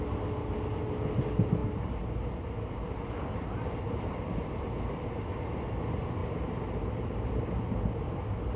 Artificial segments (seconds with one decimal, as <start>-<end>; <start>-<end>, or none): none